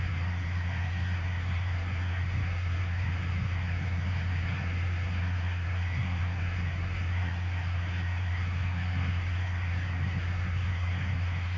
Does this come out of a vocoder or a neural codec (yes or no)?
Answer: yes